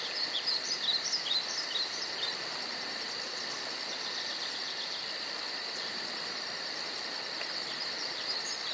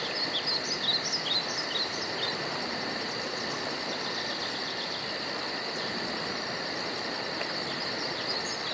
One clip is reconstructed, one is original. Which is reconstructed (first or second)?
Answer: first